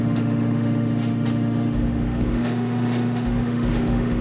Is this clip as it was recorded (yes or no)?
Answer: no